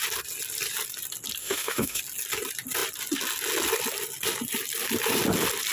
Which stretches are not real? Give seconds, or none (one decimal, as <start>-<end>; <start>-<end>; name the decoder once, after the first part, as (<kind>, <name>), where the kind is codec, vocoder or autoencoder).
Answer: 1.4-2.0 (autoencoder, DAC-VAE)